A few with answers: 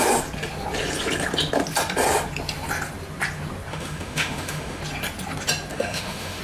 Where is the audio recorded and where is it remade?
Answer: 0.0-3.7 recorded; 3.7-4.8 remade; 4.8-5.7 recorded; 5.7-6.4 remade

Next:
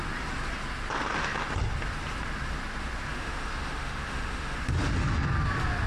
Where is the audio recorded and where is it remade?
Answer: 0.0-3.1 recorded; 3.1-4.6 remade; 4.6-5.9 recorded

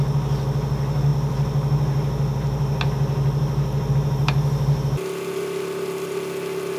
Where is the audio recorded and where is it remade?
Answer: 0.0-6.8 recorded